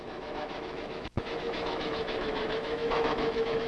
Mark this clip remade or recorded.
remade